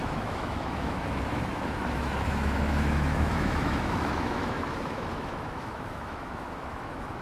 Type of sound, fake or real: fake